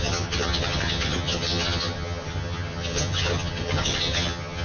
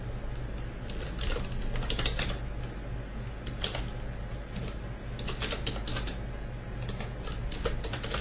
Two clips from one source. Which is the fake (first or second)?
first